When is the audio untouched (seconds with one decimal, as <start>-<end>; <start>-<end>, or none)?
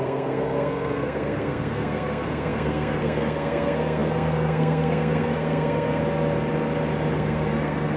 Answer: 6.0-7.1